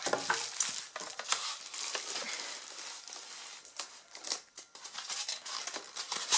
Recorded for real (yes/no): yes